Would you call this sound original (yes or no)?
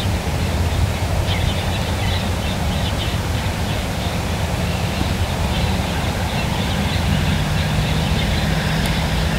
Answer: no